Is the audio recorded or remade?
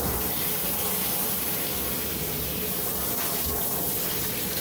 recorded